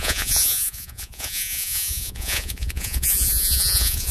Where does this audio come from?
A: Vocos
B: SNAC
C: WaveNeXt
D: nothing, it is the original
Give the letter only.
A